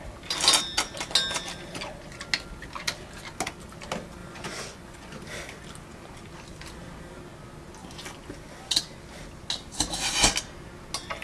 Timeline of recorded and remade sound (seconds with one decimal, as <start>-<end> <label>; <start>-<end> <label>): 0.0-4.2 recorded; 4.2-5.2 remade; 5.2-11.2 recorded